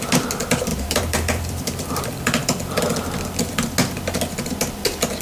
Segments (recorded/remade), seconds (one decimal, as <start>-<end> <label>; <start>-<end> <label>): 0.0-0.7 recorded; 0.7-2.8 remade; 2.8-5.2 recorded